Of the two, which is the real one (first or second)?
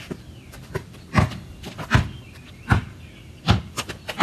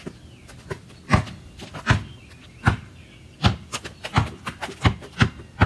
second